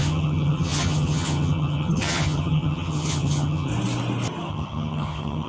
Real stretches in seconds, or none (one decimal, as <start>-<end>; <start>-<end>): 3.7-4.5